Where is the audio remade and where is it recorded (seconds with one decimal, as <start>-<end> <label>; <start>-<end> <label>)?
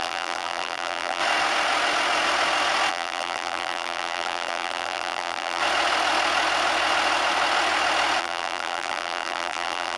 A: 0.0-1.2 remade; 1.2-2.9 recorded; 2.9-5.6 remade; 5.6-8.2 recorded; 8.2-10.0 remade